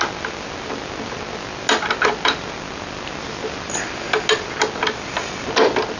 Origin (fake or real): real